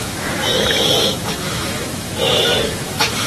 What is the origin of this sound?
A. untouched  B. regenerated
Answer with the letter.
B